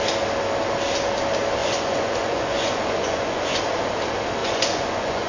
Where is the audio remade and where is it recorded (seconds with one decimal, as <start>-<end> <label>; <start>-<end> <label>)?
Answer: 0.0-1.6 recorded; 1.6-3.6 remade; 3.6-4.4 recorded; 4.4-5.3 remade